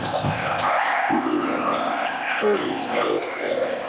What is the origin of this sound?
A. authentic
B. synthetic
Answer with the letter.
B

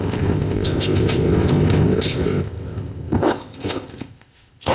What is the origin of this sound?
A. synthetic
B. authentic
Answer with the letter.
A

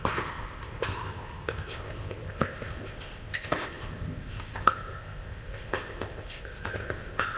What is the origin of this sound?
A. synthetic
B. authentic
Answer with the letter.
A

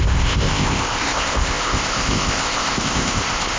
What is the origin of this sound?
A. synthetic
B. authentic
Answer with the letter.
A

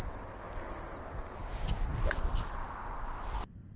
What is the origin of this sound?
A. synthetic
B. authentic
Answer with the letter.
B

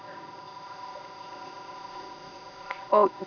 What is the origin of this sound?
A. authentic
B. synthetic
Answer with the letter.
B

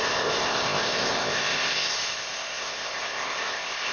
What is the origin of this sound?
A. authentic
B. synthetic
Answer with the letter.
B